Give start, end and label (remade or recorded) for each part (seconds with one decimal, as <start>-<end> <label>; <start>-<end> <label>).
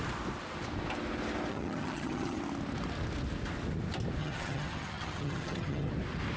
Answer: 0.0-1.5 recorded; 1.5-2.4 remade; 2.4-4.2 recorded; 4.2-5.9 remade; 5.9-6.4 recorded